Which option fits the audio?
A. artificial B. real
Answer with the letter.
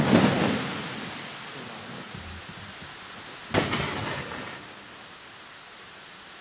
B